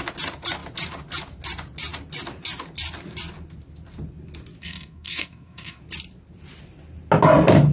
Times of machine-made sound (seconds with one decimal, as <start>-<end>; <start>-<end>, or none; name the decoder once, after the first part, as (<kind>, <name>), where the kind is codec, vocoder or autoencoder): 4.6-5.8 (codec, SNAC)